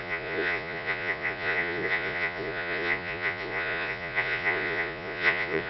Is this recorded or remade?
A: remade